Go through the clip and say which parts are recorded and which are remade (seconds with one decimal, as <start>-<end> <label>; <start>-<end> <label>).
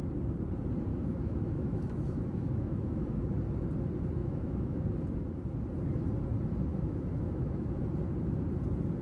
0.0-0.9 recorded; 0.9-3.4 remade; 3.4-4.2 recorded; 4.2-4.8 remade; 4.8-6.7 recorded; 6.7-7.8 remade; 7.8-9.0 recorded